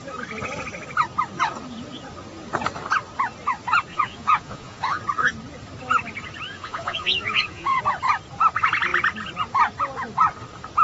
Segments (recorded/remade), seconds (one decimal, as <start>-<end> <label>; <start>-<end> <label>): 0.0-3.9 recorded; 3.9-5.0 remade; 5.0-6.5 recorded; 6.5-7.8 remade; 7.8-10.8 recorded